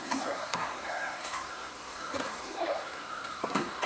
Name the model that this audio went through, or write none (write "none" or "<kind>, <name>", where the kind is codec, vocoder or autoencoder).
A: codec, SNAC